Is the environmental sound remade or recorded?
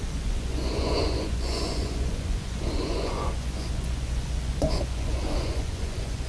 remade